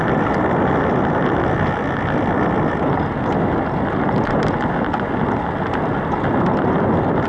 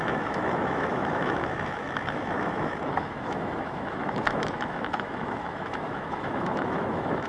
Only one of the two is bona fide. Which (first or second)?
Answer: first